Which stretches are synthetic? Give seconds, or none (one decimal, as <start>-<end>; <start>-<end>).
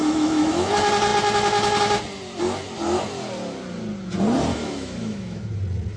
0.0-0.7; 4.5-5.4